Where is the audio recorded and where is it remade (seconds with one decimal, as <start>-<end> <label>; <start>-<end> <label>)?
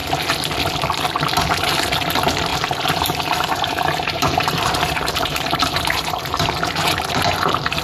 0.0-2.5 recorded; 2.5-6.9 remade; 6.9-7.8 recorded